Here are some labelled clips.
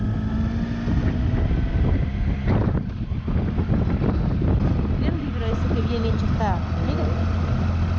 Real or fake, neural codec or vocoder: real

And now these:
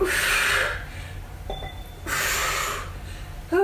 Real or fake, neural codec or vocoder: real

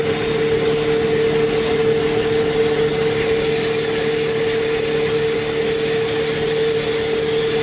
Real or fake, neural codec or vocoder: real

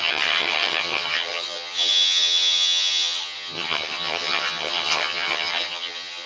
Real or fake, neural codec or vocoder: fake, vocoder, HiFi-GAN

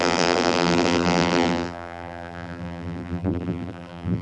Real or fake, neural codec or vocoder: fake, vocoder, BigVGAN v2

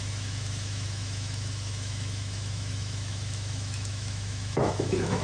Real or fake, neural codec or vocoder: fake, autoencoder, DAC-VAE